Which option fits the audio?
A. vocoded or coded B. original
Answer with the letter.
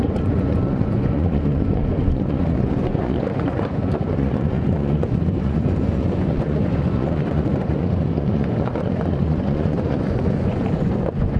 A